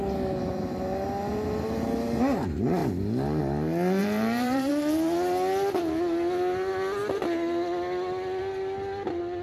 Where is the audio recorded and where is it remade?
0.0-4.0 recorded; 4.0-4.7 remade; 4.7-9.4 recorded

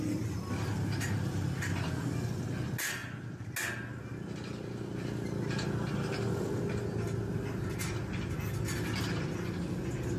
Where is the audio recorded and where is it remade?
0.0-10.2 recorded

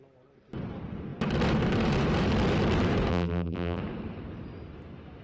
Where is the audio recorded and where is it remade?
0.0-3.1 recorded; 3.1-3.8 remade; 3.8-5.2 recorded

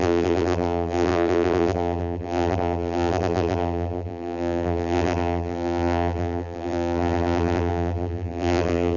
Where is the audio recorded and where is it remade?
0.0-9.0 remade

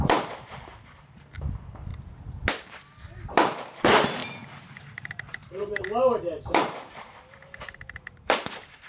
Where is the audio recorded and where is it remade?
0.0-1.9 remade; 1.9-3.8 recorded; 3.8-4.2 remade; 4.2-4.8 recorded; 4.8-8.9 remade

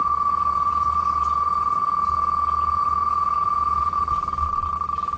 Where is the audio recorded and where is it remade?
0.0-1.8 remade; 1.8-2.8 recorded; 2.8-5.2 remade

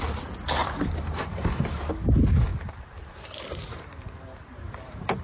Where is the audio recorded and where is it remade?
0.0-0.6 recorded; 0.6-1.9 remade; 1.9-2.5 recorded; 2.5-5.2 remade